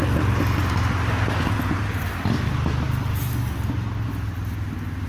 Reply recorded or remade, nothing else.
recorded